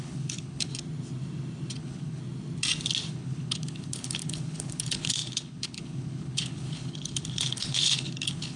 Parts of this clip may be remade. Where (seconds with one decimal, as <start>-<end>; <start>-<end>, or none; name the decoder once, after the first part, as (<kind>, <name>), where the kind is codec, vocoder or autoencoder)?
0.0-0.7 (codec, HILCodec); 1.8-2.2; 3.1-8.6